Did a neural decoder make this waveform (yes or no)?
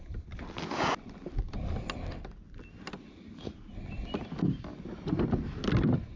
no